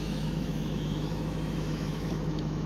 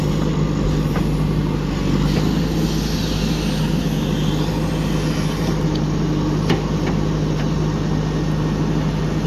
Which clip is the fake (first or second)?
first